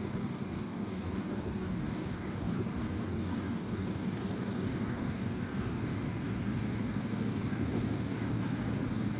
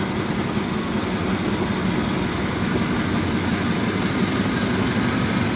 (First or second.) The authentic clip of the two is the second